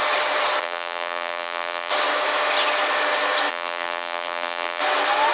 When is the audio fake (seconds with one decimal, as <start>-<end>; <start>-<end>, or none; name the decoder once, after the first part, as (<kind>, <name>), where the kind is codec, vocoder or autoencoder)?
0.6-1.9 (vocoder, BigVGAN v2); 3.5-4.8